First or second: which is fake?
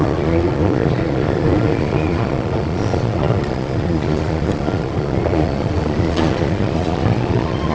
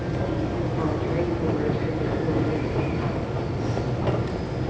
first